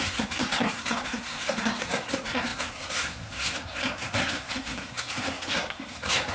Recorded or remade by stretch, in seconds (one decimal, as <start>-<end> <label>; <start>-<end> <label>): 0.0-6.3 remade